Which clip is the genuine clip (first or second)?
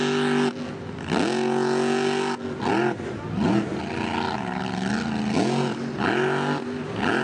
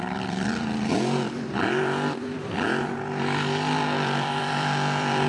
first